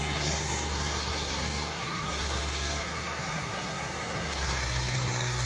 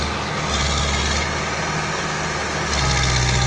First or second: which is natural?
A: second